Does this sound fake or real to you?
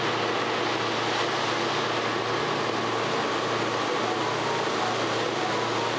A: real